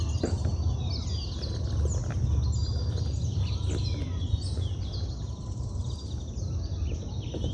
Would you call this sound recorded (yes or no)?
yes